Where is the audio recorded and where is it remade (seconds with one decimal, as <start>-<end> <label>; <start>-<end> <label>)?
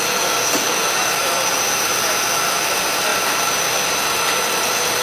0.0-3.1 recorded; 3.1-5.0 remade